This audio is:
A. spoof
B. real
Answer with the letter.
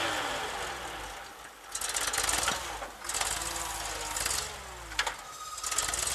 B